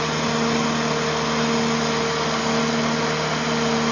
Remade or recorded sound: recorded